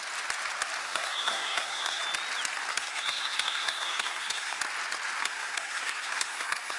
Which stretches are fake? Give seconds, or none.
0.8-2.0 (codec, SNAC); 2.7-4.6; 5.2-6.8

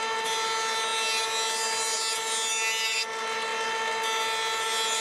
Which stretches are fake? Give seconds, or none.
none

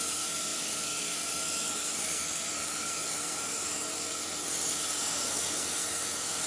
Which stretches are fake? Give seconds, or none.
0.0-6.5 (codec, SNAC)

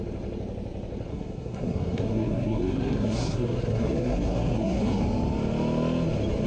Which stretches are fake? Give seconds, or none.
1.1-5.0 (codec, SNAC)

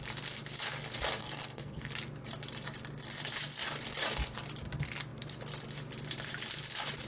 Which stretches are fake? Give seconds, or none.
1.2-1.9 (codec, SNAC)

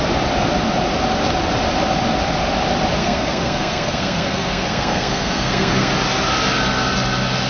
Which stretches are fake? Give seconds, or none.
3.0-5.9 (codec, SNAC)

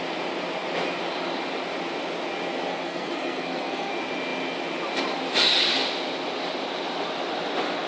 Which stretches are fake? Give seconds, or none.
2.7-3.9 (codec, SNAC)

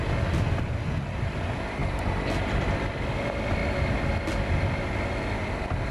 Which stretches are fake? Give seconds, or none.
none